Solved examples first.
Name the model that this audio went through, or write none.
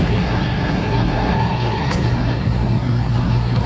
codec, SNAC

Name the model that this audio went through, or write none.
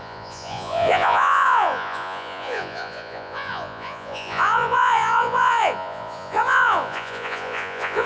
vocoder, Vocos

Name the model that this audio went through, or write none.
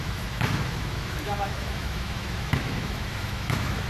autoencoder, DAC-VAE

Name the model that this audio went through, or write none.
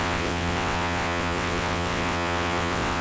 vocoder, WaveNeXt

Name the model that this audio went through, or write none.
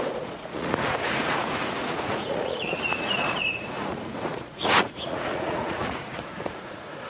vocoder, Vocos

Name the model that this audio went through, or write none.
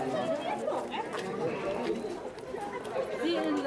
none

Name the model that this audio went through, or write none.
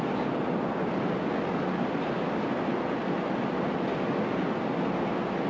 none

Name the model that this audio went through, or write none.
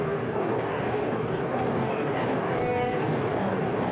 codec, DAC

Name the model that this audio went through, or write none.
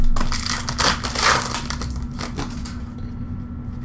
none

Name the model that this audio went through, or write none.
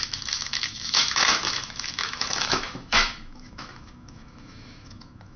autoencoder, DAC-VAE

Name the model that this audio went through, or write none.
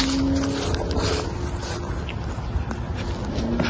none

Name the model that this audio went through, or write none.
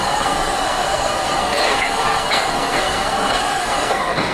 codec, SNAC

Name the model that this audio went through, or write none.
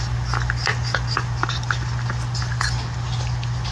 none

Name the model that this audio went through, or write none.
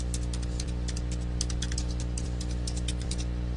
none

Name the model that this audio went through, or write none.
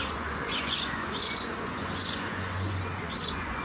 vocoder, Vocos